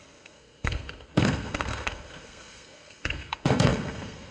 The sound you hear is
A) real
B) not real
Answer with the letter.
B